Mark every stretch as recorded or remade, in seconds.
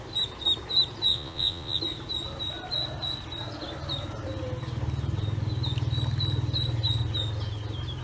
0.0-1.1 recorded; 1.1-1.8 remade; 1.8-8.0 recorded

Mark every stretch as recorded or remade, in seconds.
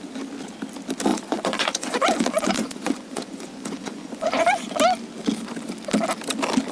0.0-1.1 recorded; 1.1-4.8 remade; 4.8-6.7 recorded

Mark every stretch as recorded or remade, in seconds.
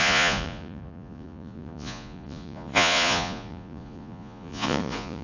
0.0-5.2 remade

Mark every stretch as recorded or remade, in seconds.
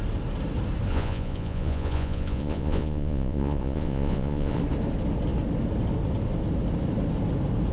0.0-0.9 recorded; 0.9-4.6 remade; 4.6-7.7 recorded